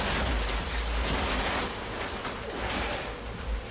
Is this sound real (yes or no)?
yes